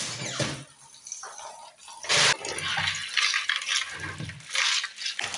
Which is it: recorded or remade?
recorded